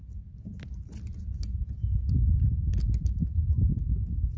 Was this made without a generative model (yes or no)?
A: yes